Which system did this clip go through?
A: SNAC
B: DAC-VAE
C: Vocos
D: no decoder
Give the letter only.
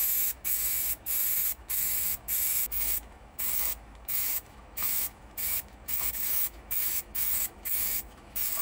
B